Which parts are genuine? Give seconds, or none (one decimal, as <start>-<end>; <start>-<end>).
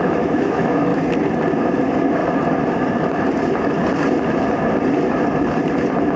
0.9-1.8; 2.2-6.2